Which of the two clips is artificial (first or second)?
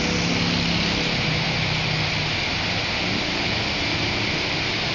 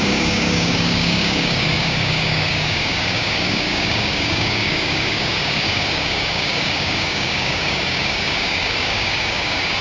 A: second